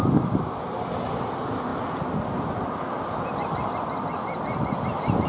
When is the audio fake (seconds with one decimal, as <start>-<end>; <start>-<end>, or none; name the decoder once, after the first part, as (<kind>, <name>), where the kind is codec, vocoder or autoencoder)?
none